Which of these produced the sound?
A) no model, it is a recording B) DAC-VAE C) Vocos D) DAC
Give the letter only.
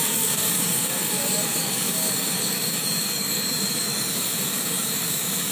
D